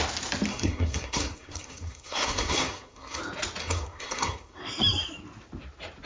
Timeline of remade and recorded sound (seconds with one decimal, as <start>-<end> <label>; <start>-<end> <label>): 0.0-0.5 recorded; 0.5-3.2 remade; 3.2-3.6 recorded; 3.6-4.6 remade; 4.6-6.1 recorded